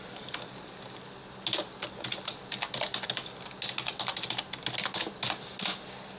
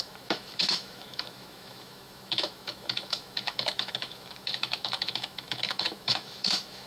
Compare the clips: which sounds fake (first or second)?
second